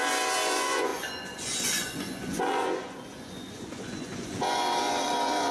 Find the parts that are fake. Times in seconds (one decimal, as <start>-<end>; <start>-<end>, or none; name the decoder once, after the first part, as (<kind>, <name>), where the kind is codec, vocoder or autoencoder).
0.0-5.5 (vocoder, Vocos)